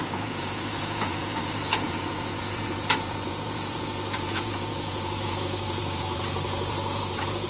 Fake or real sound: fake